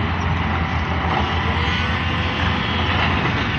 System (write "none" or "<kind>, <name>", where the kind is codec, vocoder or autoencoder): none